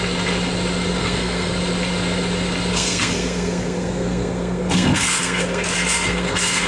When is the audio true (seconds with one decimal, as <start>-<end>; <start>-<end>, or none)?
0.0-1.0; 1.5-2.7